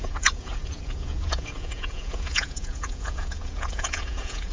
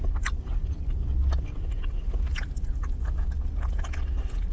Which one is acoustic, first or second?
second